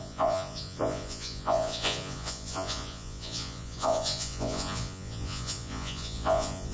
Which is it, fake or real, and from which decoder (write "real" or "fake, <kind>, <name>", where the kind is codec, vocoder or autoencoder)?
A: fake, vocoder, Vocos